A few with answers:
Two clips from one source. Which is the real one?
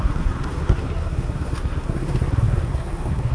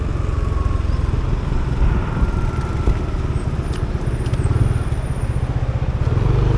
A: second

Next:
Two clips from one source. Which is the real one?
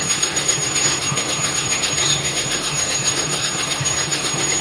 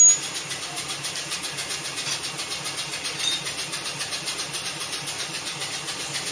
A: second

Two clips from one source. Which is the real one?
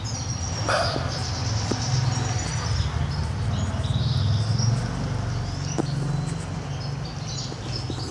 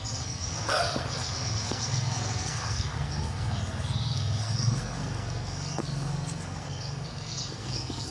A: first